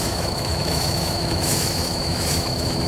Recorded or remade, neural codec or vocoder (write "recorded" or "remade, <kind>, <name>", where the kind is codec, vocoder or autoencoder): remade, autoencoder, DAC-VAE